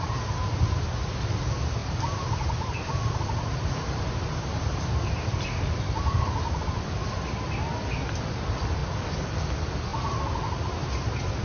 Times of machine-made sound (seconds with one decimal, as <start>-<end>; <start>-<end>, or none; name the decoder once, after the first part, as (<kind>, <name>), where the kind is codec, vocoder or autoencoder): 1.8-7.0 (vocoder, BigVGAN v2)